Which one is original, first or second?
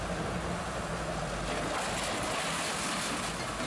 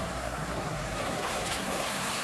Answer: first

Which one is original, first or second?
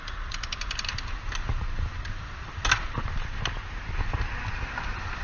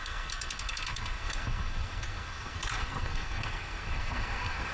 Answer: first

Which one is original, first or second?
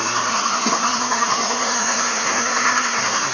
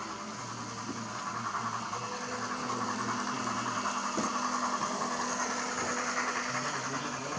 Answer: second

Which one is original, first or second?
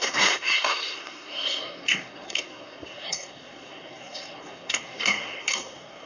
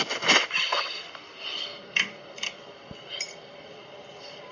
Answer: second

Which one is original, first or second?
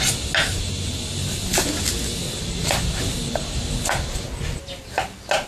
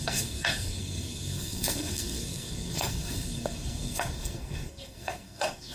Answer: first